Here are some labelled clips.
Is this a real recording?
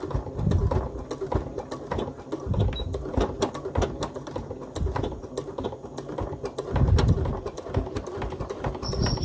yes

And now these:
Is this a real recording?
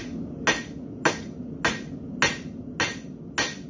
yes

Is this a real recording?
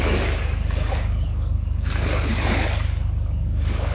no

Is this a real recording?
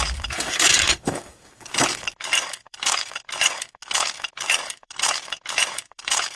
no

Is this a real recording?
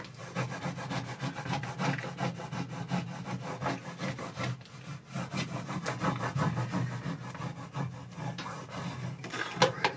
yes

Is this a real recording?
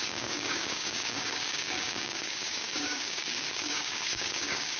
no